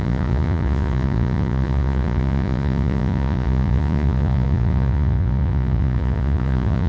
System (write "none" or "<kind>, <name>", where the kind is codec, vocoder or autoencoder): vocoder, Vocos